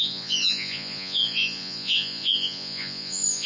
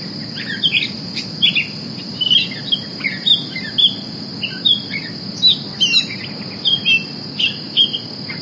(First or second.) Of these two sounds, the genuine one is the second